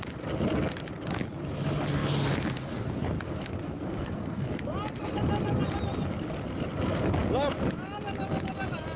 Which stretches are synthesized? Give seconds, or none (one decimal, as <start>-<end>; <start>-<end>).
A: 3.6-4.5

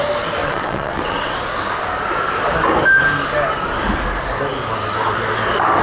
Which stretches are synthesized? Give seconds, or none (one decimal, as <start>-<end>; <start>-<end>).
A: 0.4-1.4

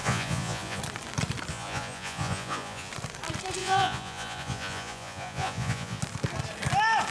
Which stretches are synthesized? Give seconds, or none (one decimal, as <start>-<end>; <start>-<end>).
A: 0.0-0.8; 1.5-2.9; 3.6-6.0

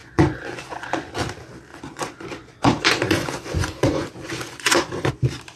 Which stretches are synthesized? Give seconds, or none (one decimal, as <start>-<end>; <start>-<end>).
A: 0.0-1.1; 1.7-5.1